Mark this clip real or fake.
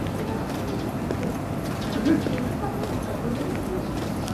real